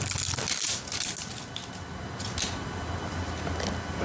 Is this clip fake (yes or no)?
no